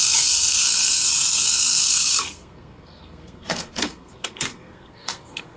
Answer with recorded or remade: remade